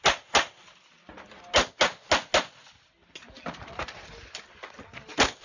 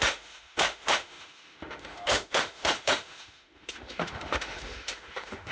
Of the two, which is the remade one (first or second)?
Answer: second